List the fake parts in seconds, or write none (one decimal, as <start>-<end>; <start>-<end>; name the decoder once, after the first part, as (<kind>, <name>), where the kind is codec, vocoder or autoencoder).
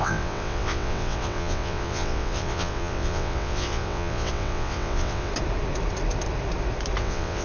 0.0-5.3 (vocoder, WaveNeXt); 7.0-7.4